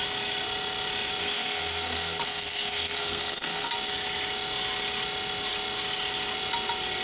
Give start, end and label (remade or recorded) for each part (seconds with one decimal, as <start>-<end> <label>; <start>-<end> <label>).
0.0-1.2 recorded; 1.2-3.7 remade; 3.7-7.0 recorded